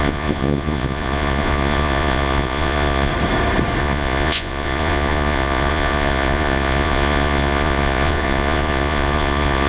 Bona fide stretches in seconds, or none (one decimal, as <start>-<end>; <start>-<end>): 3.1-3.8